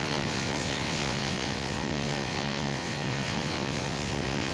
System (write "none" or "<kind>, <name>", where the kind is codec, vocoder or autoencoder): vocoder, WaveNeXt